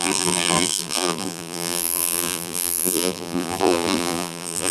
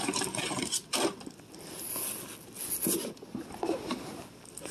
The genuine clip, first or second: second